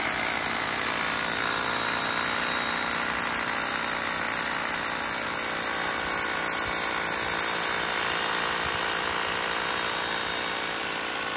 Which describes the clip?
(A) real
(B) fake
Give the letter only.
A